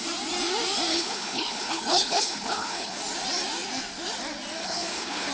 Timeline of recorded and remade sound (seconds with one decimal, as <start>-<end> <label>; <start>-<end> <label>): 0.0-0.9 recorded; 0.9-3.0 remade; 3.0-4.6 recorded; 4.6-5.3 remade